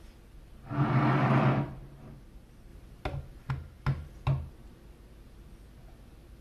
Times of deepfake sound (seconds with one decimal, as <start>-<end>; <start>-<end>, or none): none